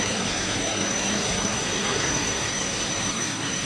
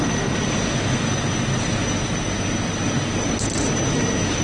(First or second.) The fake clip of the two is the first